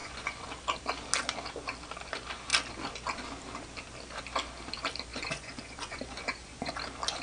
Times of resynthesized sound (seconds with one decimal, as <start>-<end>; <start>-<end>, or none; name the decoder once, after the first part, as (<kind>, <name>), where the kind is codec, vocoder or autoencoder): 0.0-0.5 (vocoder, Vocos); 5.1-6.7

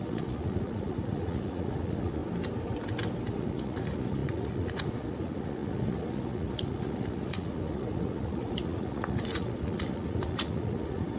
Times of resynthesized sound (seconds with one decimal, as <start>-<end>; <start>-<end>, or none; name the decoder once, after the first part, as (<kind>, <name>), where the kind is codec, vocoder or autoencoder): 0.0-2.2 (vocoder, Vocos); 3.3-11.2

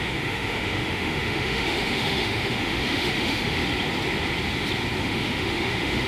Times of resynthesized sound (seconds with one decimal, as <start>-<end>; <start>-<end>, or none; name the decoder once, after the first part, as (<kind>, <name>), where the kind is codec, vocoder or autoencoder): 0.0-3.6 (autoencoder, DAC-VAE); 5.0-6.1

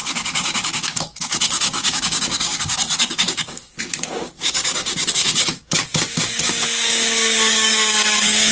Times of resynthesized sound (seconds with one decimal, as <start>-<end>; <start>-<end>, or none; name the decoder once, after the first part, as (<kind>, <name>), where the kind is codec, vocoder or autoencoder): 0.0-8.5 (codec, DAC)

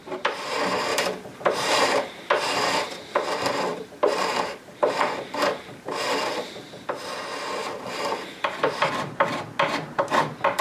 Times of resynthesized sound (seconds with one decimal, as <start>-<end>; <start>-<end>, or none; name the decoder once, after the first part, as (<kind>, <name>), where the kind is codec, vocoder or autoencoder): 0.9-2.3 (vocoder, BigVGAN v2); 3.7-5.9; 7.6-9.4